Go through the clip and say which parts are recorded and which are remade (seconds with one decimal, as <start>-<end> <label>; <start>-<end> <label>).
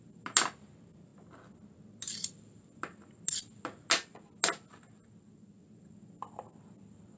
0.0-7.2 recorded